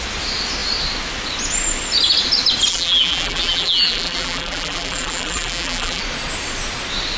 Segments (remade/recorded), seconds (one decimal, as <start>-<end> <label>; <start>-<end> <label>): 0.0-2.7 recorded; 2.7-6.0 remade; 6.0-7.2 recorded